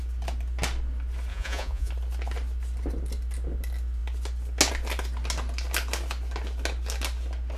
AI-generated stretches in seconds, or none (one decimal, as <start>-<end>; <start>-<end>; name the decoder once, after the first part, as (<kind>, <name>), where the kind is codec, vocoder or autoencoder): 1.3-1.9 (vocoder, Vocos)